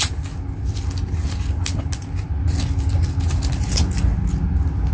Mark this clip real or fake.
real